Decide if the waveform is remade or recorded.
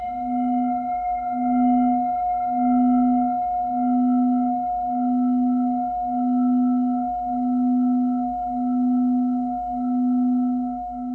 remade